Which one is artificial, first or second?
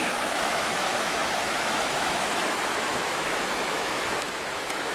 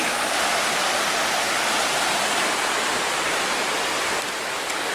first